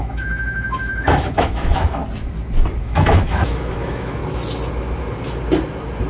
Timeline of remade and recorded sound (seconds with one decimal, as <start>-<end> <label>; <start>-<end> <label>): 0.0-2.0 remade; 2.0-2.8 recorded; 2.8-4.2 remade; 4.2-6.1 recorded